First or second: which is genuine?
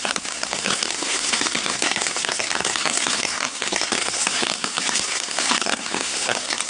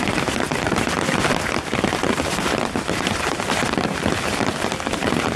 second